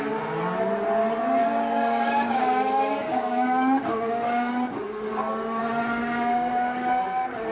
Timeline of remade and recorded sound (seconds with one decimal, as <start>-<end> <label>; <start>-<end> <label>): 0.0-1.4 recorded; 1.4-4.5 remade; 4.5-6.0 recorded; 6.0-6.9 remade; 6.9-7.5 recorded